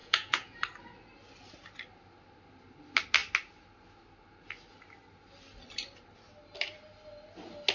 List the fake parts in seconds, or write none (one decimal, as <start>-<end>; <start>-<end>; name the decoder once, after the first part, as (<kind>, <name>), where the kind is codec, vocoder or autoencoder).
0.0-0.6 (vocoder, Vocos)

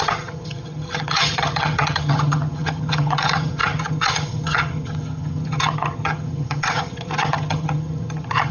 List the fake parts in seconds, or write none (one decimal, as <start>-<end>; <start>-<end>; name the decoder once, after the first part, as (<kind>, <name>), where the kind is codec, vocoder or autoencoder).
0.0-8.5 (vocoder, HiFi-GAN)

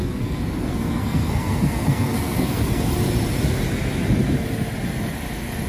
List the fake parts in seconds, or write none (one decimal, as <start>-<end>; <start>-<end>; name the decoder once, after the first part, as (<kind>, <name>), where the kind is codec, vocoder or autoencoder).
0.0-2.9 (codec, SNAC)

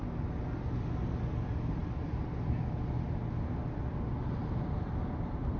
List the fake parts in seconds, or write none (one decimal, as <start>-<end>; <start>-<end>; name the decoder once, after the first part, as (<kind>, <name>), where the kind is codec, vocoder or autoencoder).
none

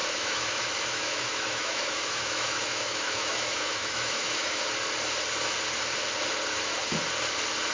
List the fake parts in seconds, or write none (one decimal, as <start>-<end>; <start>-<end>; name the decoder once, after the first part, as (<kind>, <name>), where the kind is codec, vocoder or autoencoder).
0.0-4.6 (autoencoder, DAC-VAE)

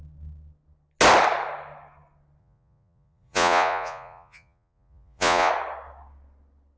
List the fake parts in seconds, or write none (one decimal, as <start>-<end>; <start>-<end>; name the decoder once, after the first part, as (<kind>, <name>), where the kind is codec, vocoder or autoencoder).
2.4-5.5 (vocoder, Vocos)